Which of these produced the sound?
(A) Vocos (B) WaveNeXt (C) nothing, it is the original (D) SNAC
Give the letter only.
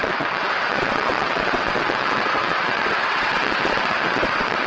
B